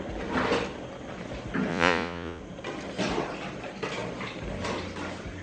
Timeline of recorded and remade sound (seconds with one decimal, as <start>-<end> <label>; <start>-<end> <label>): 0.0-1.7 recorded; 1.7-2.4 remade; 2.4-5.4 recorded